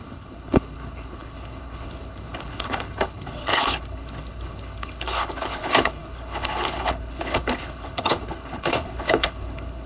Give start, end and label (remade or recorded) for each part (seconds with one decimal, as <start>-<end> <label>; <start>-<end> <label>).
0.0-9.9 remade